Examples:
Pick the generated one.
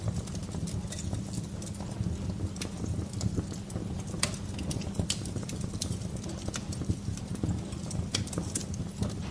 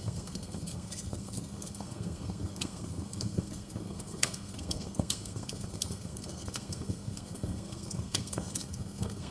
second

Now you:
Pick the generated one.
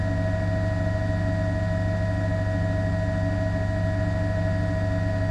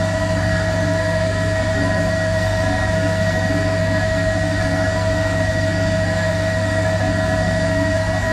second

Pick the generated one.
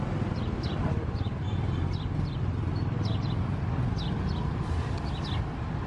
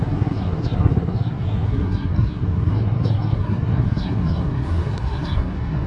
second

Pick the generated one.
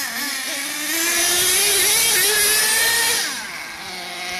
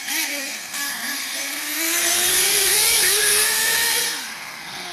second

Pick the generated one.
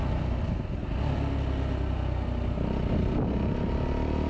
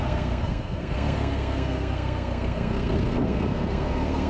second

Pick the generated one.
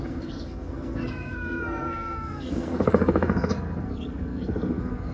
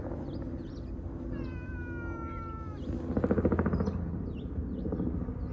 first